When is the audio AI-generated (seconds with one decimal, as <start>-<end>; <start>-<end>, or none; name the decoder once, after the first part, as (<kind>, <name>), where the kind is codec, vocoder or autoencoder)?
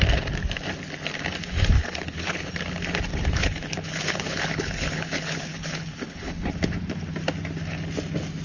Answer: 1.8-2.5 (codec, HILCodec); 3.1-6.5